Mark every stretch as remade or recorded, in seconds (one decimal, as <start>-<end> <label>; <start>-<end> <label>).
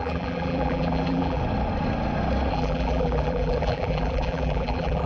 0.0-1.4 remade; 1.4-2.5 recorded; 2.5-5.1 remade